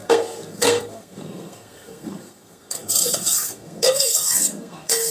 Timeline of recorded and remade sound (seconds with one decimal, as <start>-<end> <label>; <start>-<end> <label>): 0.0-5.1 remade